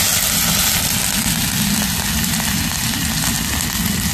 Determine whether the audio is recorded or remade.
recorded